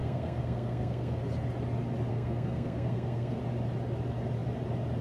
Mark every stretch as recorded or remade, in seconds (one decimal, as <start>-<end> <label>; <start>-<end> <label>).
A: 0.0-1.2 remade; 1.2-2.1 recorded; 2.1-3.4 remade; 3.4-5.0 recorded